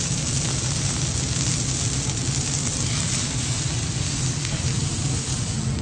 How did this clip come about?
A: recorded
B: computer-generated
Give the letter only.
A